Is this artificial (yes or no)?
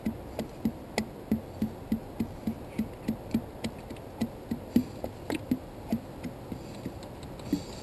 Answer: no